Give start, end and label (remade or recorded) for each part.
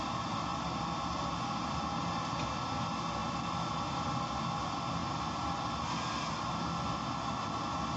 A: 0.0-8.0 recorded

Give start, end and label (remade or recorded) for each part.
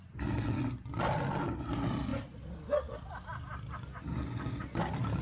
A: 0.0-5.2 recorded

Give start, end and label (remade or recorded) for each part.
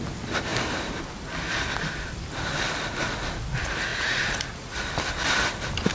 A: 0.0-3.9 recorded; 3.9-4.8 remade; 4.8-5.9 recorded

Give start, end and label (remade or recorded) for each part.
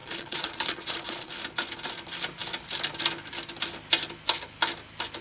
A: 0.0-1.3 remade; 1.3-5.2 recorded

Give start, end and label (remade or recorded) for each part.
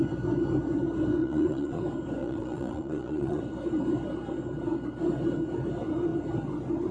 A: 0.0-1.2 recorded; 1.2-1.8 remade; 1.8-2.2 recorded; 2.2-3.4 remade; 3.4-6.9 recorded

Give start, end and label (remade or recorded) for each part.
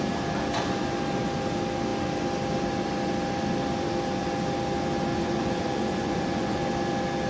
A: 0.0-5.1 recorded; 5.1-6.6 remade; 6.6-7.3 recorded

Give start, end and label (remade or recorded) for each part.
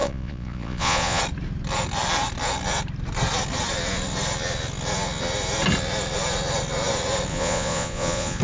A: 0.0-1.2 remade; 1.2-7.3 recorded; 7.3-8.4 remade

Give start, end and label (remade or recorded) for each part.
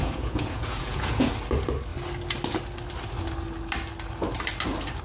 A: 0.0-1.3 remade; 1.3-5.0 recorded